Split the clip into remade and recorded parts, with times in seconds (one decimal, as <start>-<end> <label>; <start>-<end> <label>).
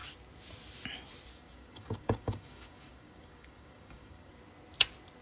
0.0-1.3 recorded; 1.3-4.3 remade; 4.3-5.2 recorded